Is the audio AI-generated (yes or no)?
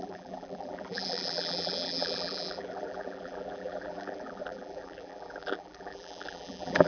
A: yes